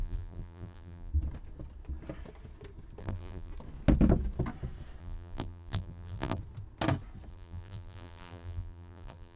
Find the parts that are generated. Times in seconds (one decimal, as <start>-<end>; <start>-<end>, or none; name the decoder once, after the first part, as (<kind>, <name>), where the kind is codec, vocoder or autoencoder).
0.0-1.1 (vocoder, BigVGAN v2); 3.0-3.5; 5.0-6.4; 7.3-9.4

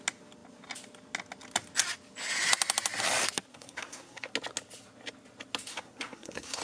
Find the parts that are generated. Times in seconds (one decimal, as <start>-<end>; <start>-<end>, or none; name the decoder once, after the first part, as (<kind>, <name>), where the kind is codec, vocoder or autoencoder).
3.5-4.3 (codec, SNAC); 5.7-6.6

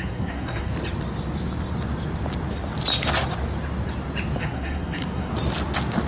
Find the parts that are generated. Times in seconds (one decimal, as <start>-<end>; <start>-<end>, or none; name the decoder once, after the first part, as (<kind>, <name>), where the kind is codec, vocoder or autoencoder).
0.0-0.7 (codec, SNAC); 4.4-5.3

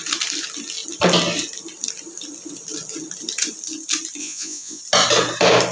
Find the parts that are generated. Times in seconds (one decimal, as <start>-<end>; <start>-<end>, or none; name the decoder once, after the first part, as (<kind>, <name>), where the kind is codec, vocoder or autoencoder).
4.2-4.8 (vocoder, Vocos)

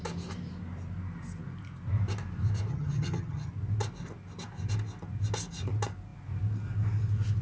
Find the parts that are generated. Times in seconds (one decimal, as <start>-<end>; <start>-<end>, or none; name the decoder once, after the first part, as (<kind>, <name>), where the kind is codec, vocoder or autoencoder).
2.7-3.5 (vocoder, HiFi-GAN)

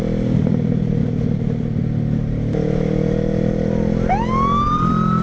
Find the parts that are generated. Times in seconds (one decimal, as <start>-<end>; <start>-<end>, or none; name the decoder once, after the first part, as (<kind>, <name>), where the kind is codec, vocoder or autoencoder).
none